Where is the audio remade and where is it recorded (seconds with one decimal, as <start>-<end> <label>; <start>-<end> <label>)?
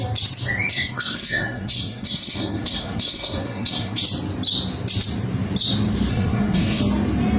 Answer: 0.0-0.7 recorded; 0.7-4.0 remade; 4.0-6.1 recorded; 6.1-6.8 remade; 6.8-7.4 recorded